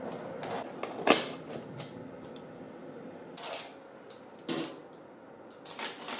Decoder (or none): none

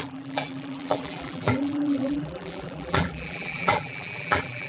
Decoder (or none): vocoder, BigVGAN v2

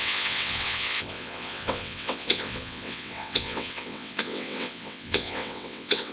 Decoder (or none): vocoder, WaveNeXt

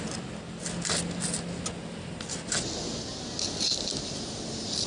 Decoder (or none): none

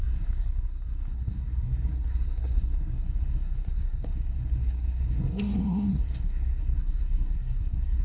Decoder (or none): codec, SNAC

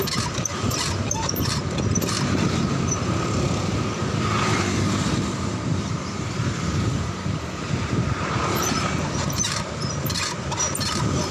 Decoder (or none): vocoder, BigVGAN v2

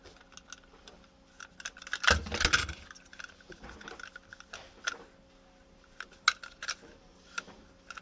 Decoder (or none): none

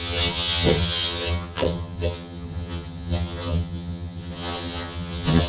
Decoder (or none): vocoder, HiFi-GAN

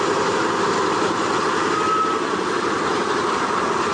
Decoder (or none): none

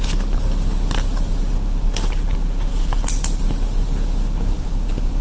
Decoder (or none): none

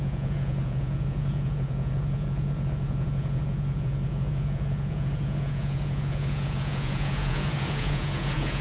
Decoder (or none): vocoder, Vocos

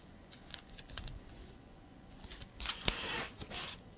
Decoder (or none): vocoder, Vocos